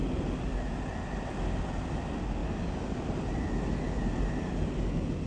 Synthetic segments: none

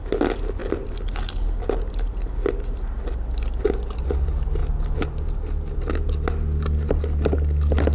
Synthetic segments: none

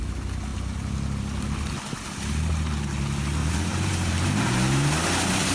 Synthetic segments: 3.4-5.5 (vocoder, BigVGAN v2)